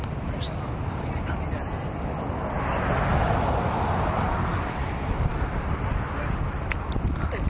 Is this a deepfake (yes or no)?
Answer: no